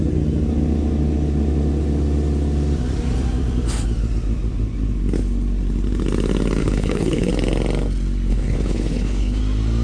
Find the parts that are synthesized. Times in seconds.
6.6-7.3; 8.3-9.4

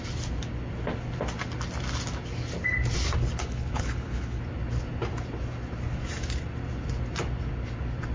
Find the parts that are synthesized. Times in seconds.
3.4-4.4